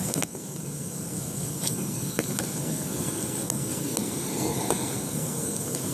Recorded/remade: remade